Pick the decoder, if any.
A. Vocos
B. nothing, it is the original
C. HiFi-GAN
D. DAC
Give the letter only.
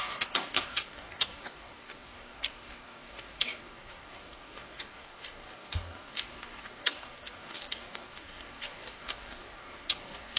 D